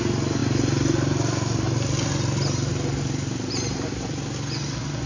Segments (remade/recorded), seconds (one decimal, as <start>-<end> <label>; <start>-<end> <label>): 0.0-5.1 recorded